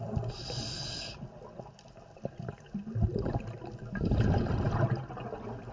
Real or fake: real